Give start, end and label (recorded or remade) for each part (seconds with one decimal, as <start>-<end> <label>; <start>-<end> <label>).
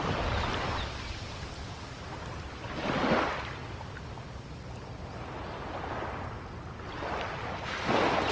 0.0-3.6 remade; 3.6-8.3 recorded